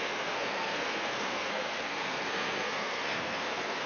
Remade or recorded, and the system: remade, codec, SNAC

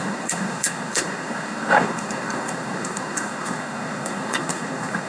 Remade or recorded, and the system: remade, codec, SNAC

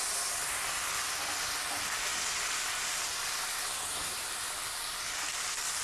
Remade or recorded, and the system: recorded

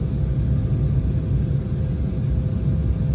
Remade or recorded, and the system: recorded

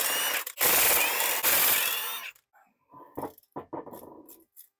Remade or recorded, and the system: recorded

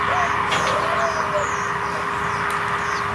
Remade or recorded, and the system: recorded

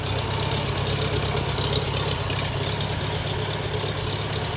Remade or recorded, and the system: recorded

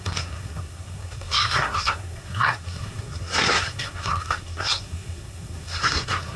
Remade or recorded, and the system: remade, codec, SNAC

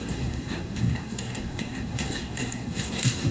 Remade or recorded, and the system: remade, codec, SNAC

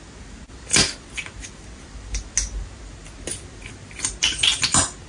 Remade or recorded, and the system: recorded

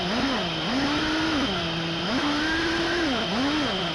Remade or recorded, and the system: recorded